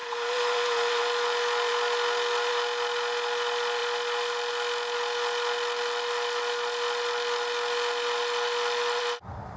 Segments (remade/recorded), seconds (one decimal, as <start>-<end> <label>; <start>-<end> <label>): 0.0-1.0 remade; 1.0-9.6 recorded